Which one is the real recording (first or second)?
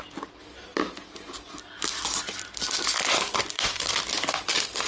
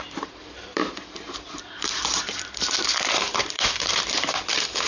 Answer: first